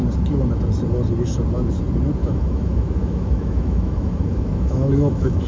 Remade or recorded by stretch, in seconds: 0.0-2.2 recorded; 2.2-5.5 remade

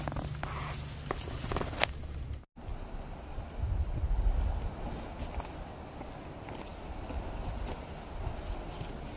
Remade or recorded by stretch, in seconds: 0.0-9.2 recorded